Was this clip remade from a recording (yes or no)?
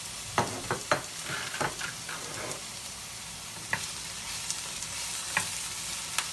no